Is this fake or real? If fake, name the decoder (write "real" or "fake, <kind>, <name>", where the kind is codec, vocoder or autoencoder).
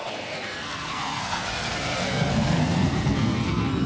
fake, codec, SNAC